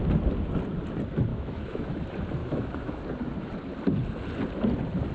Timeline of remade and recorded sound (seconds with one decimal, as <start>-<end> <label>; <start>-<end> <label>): 0.0-1.3 recorded; 1.3-2.0 remade; 2.0-2.4 recorded; 2.4-3.0 remade; 3.0-5.1 recorded